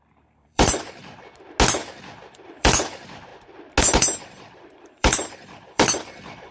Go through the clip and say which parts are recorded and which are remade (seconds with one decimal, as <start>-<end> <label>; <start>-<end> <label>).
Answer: 0.0-1.0 remade; 1.0-2.2 recorded; 2.2-3.3 remade; 3.3-3.8 recorded; 3.8-6.5 remade